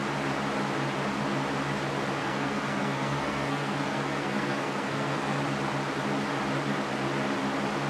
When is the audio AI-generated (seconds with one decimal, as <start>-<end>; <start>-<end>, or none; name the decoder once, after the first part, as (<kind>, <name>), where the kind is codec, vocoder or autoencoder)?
2.2-5.4 (codec, SNAC)